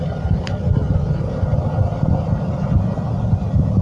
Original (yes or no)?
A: yes